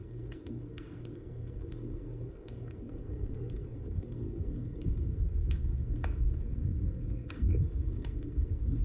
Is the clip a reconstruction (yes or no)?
yes